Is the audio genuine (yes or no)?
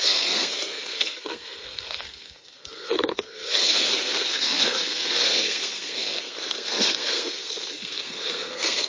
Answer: no